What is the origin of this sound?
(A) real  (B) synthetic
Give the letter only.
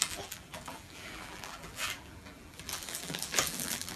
B